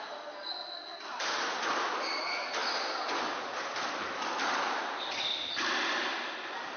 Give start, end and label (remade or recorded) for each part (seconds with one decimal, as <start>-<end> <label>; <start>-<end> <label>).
0.0-2.6 recorded; 2.6-6.8 remade